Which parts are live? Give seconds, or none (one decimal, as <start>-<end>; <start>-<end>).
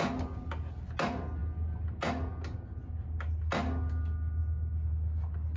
0.0-5.6